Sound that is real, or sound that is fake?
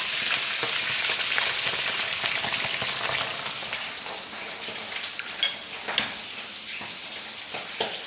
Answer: real